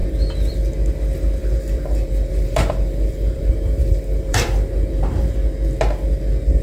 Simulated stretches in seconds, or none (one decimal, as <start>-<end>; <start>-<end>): 1.4-5.3